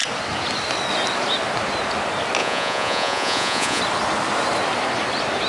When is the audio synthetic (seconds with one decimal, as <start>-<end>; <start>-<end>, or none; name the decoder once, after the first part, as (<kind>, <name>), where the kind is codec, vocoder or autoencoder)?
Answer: 2.4-3.8 (vocoder, Vocos)